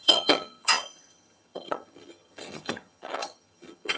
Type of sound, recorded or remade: remade